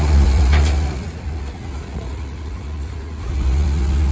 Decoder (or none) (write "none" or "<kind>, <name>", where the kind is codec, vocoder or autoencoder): vocoder, Vocos